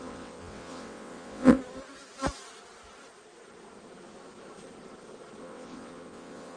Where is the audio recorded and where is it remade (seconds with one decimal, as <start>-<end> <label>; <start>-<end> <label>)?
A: 0.0-1.6 remade; 1.6-5.4 recorded; 5.4-6.6 remade